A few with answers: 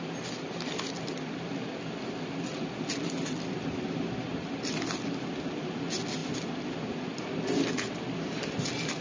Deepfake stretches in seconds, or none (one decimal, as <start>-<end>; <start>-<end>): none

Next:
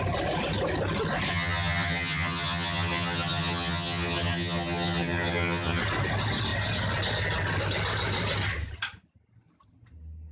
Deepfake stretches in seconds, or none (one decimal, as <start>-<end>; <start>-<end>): 1.3-5.8

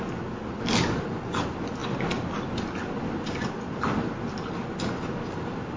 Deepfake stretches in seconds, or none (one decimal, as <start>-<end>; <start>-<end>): none

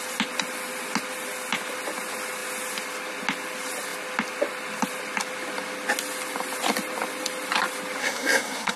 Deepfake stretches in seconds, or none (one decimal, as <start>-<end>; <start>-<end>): 8.0-8.8

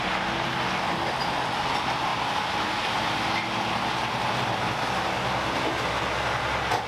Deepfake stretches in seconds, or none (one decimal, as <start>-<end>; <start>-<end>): 2.1-2.8

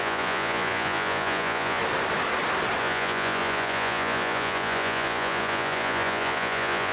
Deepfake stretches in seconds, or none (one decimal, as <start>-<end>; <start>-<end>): 0.0-1.8; 2.8-6.9

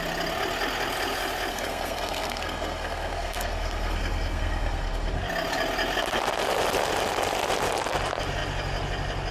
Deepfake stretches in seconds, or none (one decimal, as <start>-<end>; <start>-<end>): 1.5-5.2